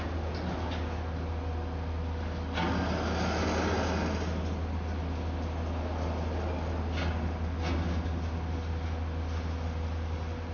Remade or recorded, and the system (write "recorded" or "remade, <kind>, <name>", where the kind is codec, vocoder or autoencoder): recorded